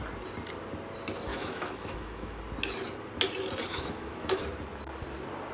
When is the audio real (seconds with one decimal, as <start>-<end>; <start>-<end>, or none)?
0.0-1.3; 2.4-3.7; 4.4-5.5